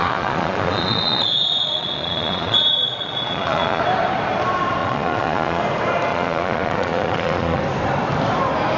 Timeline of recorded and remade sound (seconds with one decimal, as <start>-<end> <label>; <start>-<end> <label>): 0.0-3.8 remade; 3.8-4.8 recorded; 4.8-5.6 remade; 5.6-6.1 recorded; 6.1-7.6 remade; 7.6-8.8 recorded